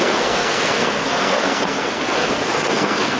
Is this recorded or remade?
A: remade